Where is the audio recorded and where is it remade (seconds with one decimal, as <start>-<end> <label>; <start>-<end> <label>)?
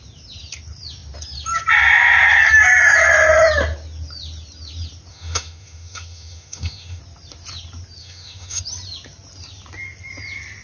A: 0.0-5.1 recorded; 5.1-7.0 remade; 7.0-8.0 recorded; 8.0-8.6 remade; 8.6-10.6 recorded